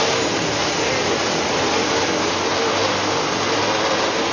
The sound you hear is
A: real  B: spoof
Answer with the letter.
A